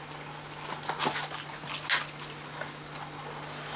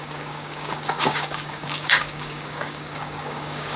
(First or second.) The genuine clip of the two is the first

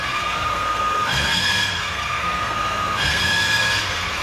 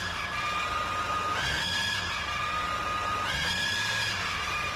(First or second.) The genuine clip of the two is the second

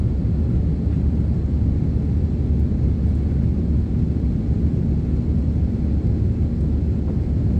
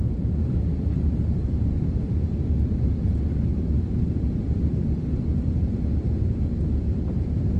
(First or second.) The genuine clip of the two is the first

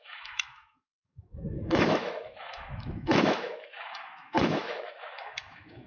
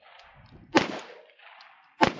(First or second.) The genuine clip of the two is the second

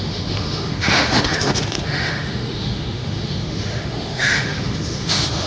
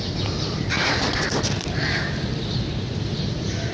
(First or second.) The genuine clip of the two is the second